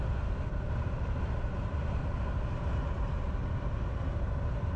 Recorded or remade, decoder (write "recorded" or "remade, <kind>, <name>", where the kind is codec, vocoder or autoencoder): recorded